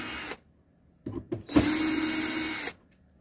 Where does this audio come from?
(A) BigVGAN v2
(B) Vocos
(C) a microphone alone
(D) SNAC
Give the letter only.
C